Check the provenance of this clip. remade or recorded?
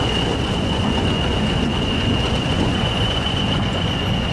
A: remade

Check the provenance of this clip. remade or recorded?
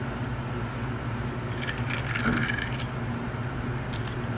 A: recorded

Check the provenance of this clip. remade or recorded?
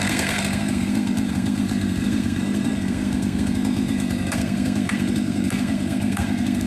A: remade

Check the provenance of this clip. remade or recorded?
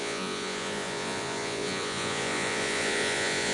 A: remade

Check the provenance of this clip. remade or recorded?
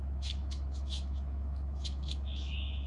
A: remade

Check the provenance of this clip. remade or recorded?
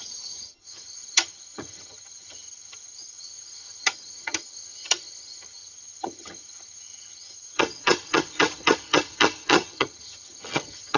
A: remade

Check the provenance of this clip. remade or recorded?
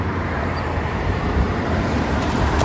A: remade